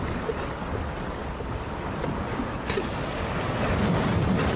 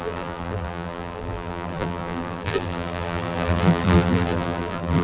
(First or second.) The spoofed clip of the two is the second